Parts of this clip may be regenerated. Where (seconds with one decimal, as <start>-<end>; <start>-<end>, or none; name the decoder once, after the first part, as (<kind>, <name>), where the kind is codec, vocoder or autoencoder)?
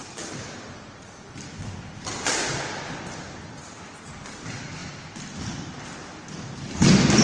none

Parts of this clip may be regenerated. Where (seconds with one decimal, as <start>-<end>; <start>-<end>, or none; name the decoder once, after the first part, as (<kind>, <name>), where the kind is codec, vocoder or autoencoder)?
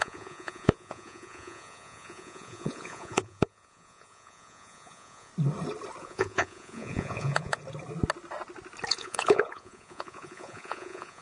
0.0-5.3 (vocoder, Vocos); 6.0-7.6; 8.9-11.2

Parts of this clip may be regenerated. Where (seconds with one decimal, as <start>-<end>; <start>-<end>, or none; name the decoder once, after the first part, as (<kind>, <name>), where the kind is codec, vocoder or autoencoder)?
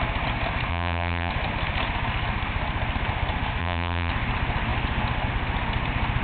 0.7-1.3 (vocoder, BigVGAN v2); 3.6-4.1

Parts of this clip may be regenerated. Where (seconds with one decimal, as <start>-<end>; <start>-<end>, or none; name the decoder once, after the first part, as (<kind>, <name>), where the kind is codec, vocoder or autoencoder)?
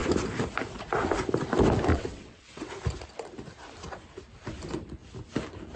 1.9-2.7 (vocoder, WaveNeXt)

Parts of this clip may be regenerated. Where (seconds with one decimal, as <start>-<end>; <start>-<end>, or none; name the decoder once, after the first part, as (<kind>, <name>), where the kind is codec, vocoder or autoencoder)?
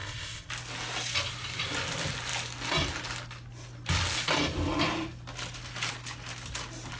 0.0-0.5 (codec, ZipCodec)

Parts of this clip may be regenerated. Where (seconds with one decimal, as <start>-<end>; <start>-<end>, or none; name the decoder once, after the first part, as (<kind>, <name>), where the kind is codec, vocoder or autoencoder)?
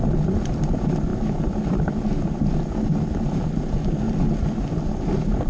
none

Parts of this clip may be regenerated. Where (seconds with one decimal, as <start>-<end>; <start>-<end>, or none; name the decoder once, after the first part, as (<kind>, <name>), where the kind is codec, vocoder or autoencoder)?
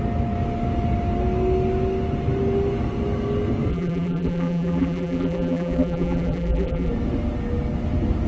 3.7-6.9 (vocoder, BigVGAN v2)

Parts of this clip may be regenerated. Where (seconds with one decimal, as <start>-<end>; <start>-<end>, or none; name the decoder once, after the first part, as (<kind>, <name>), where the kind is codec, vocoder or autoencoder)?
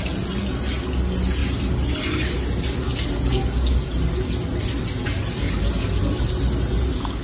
none